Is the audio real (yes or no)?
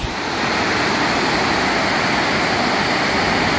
yes